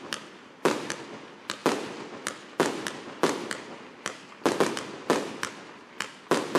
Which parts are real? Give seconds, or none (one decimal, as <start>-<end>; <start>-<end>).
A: 0.0-6.6